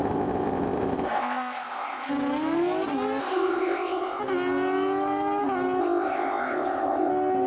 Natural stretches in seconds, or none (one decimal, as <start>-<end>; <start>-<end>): 2.1-3.2; 4.2-5.8; 7.1-7.5